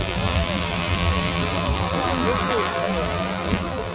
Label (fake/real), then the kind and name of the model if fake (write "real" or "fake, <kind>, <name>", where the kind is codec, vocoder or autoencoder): fake, vocoder, BigVGAN v2